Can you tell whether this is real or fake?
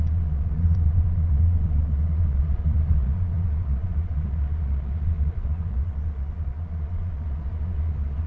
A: fake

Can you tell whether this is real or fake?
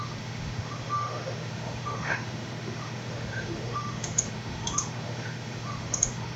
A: fake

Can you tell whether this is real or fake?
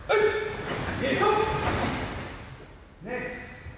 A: real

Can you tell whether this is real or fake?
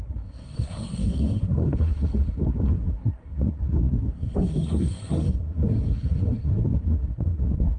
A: fake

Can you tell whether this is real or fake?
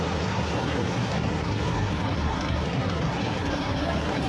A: fake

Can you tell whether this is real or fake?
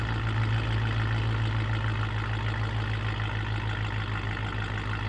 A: real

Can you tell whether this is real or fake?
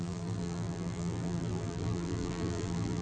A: fake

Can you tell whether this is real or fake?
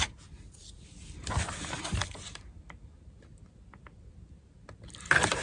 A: real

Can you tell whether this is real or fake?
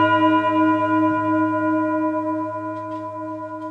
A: real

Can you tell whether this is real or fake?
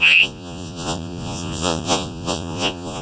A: fake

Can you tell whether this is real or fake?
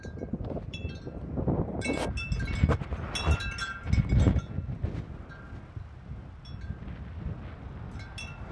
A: real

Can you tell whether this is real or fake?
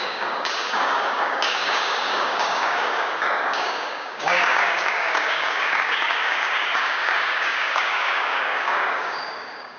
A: fake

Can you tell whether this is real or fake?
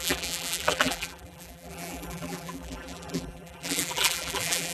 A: fake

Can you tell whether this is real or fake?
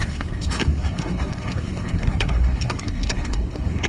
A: fake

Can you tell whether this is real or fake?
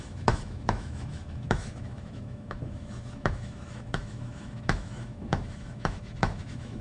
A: fake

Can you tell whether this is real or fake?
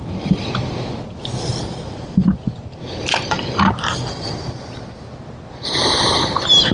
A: real